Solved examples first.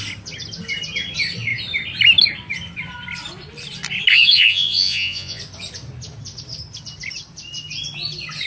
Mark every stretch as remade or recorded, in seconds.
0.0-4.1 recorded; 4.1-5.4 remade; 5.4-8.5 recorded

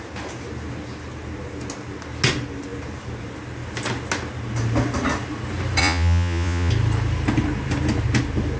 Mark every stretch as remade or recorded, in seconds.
0.0-5.8 recorded; 5.8-6.7 remade; 6.7-8.6 recorded

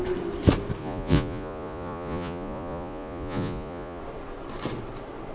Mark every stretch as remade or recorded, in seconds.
0.0-0.8 recorded; 0.8-4.0 remade; 4.0-5.3 recorded

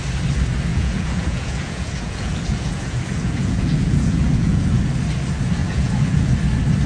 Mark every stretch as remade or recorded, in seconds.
0.0-0.7 recorded; 0.7-4.8 remade; 4.8-5.6 recorded; 5.6-6.3 remade; 6.3-6.9 recorded

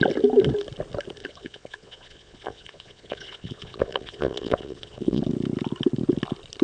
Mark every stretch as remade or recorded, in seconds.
0.0-1.2 recorded; 1.2-5.2 remade; 5.2-6.6 recorded